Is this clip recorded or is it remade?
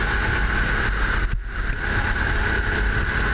recorded